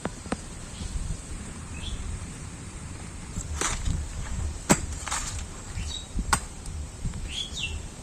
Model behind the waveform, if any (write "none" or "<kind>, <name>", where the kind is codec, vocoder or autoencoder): vocoder, BigVGAN v2